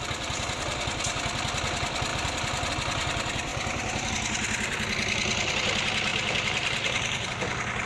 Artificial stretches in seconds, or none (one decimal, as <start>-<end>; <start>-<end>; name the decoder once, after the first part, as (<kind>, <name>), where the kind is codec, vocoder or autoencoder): 2.1-2.7 (vocoder, BigVGAN v2); 3.5-4.1; 6.1-7.3

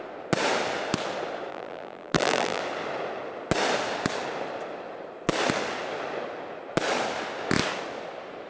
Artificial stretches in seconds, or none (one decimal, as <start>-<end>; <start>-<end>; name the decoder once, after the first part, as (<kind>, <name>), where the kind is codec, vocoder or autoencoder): 1.5-2.6 (vocoder, BigVGAN v2)

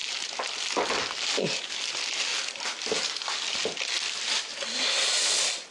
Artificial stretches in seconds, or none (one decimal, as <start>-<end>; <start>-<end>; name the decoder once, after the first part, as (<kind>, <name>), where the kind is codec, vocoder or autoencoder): 2.3-4.5 (vocoder, BigVGAN v2)

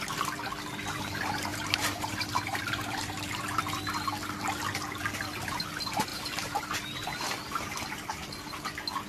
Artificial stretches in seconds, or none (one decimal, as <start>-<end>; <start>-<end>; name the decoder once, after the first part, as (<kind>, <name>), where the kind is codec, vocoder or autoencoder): 1.5-3.6 (vocoder, BigVGAN v2); 6.1-6.6